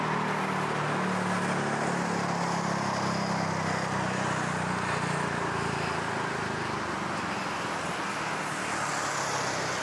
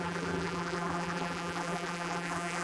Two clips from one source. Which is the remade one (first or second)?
second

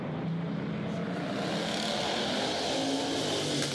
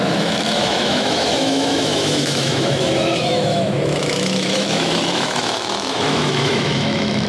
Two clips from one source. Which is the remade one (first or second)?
second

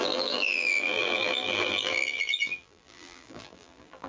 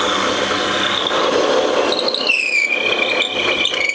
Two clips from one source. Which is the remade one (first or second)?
first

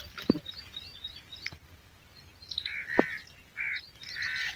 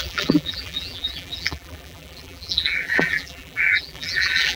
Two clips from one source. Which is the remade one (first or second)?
second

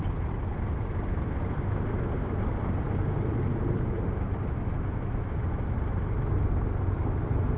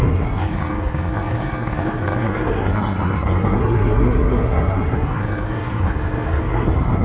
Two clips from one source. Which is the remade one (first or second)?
second